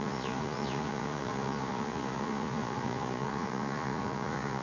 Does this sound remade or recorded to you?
remade